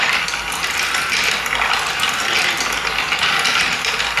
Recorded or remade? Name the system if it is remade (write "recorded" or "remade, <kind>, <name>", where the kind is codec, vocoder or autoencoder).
recorded